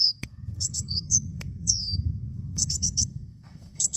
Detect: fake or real fake